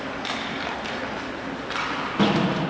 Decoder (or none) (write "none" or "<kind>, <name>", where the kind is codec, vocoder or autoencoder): none